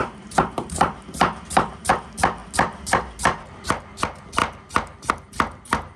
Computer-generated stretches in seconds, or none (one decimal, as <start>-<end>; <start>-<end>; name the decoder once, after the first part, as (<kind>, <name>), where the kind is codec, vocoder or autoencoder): 0.0-1.9 (vocoder, BigVGAN v2)